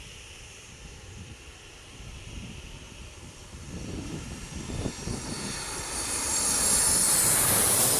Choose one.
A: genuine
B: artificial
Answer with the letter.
B